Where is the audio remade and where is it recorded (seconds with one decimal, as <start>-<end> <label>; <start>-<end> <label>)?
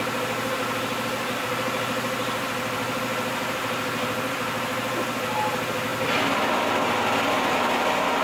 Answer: 0.0-8.2 recorded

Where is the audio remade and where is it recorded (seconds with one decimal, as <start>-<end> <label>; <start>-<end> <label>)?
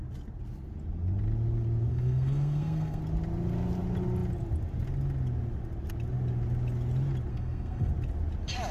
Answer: 0.0-1.9 recorded; 1.9-3.0 remade; 3.0-7.3 recorded; 7.3-7.9 remade; 7.9-8.7 recorded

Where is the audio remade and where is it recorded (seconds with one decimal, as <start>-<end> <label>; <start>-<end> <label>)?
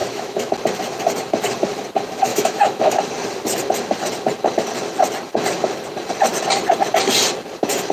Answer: 0.0-0.5 remade; 0.5-2.3 recorded; 2.3-3.0 remade; 3.0-7.9 recorded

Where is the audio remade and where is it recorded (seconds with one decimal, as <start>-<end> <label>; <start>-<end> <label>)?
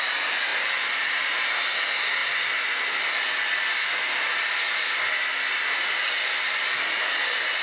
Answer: 0.0-7.6 recorded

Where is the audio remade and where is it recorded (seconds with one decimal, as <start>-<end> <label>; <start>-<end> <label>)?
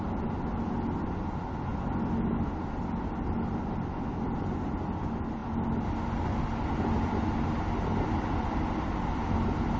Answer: 0.0-9.8 recorded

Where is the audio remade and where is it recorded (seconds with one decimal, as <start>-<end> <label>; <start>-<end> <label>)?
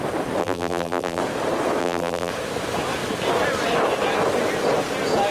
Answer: 0.0-0.4 recorded; 0.4-1.2 remade; 1.2-1.8 recorded; 1.8-2.3 remade; 2.3-5.3 recorded